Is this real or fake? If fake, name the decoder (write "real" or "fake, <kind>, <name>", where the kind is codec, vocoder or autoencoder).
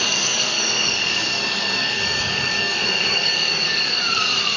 fake, codec, DAC